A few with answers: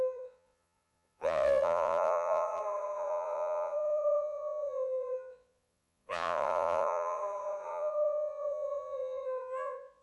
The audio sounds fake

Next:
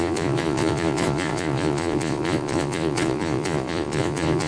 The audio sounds fake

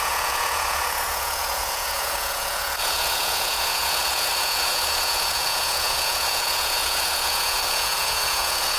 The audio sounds fake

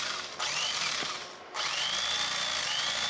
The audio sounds real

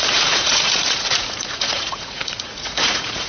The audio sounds fake